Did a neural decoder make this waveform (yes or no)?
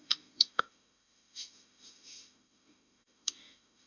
yes